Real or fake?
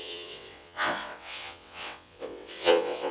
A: fake